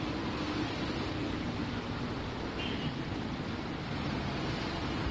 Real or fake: real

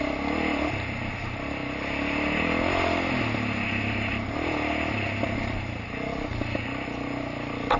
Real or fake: real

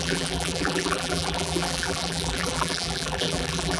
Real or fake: fake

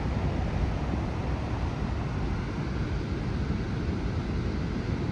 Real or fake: real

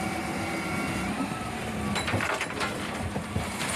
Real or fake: fake